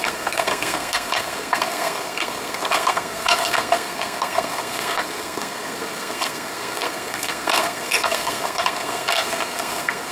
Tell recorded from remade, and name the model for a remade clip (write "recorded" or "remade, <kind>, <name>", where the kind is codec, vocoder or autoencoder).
remade, codec, SNAC